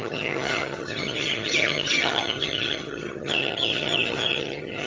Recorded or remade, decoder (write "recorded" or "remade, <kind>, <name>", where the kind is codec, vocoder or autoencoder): remade, vocoder, HiFi-GAN